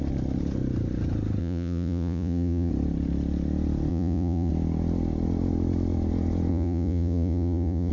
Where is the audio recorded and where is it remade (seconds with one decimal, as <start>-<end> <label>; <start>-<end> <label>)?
0.0-1.4 recorded; 1.4-2.7 remade; 2.7-3.9 recorded; 3.9-4.5 remade; 4.5-6.5 recorded; 6.5-7.9 remade